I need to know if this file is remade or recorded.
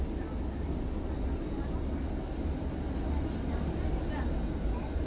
recorded